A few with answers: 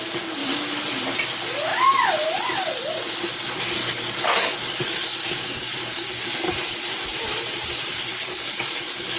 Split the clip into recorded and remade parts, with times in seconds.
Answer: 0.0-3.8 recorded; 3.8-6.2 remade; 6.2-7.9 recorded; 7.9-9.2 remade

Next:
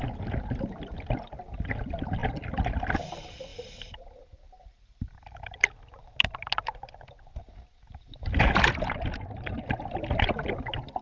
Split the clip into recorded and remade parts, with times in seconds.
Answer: 0.0-11.0 recorded

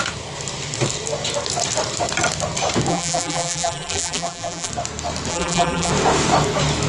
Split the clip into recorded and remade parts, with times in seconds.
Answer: 0.0-2.9 recorded; 2.9-4.7 remade; 4.7-5.3 recorded; 5.3-5.9 remade; 5.9-6.9 recorded

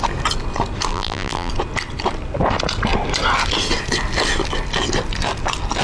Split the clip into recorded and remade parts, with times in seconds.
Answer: 0.0-0.9 recorded; 0.9-1.5 remade; 1.5-5.8 recorded

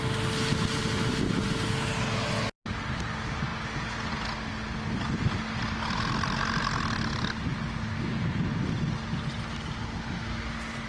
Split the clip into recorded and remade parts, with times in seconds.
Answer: 0.0-10.9 recorded

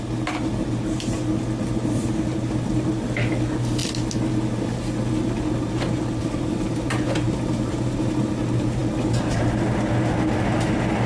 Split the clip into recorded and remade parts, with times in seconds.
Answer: 0.0-2.0 recorded; 2.0-2.9 remade; 2.9-6.2 recorded; 6.2-8.2 remade; 8.2-11.1 recorded

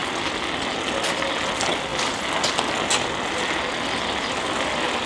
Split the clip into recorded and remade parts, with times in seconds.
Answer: 0.0-5.1 recorded

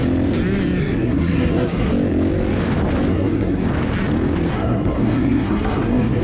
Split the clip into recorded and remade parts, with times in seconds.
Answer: 0.0-0.8 recorded; 0.8-1.9 remade; 1.9-3.1 recorded; 3.1-3.6 remade; 3.6-4.5 recorded; 4.5-6.2 remade